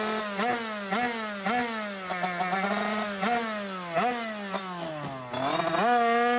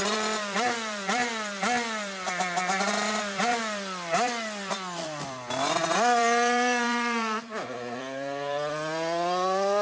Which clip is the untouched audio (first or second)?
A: first